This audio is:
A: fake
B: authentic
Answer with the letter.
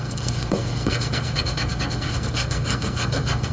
A